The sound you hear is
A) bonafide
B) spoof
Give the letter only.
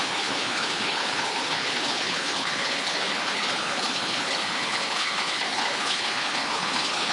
B